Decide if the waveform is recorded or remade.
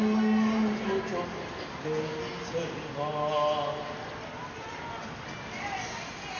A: recorded